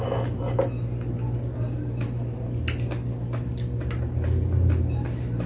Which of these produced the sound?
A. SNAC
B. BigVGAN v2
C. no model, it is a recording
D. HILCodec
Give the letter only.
C